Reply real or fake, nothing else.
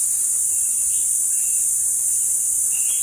fake